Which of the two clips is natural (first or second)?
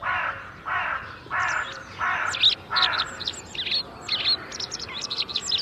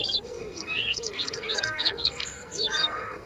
first